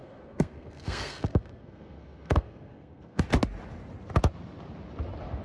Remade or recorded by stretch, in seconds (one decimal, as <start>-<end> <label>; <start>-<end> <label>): 0.0-3.2 remade; 3.2-5.4 recorded